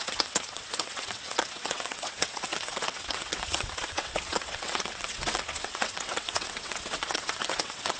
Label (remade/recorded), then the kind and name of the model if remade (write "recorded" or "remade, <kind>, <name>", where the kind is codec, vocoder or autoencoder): remade, vocoder, WaveNeXt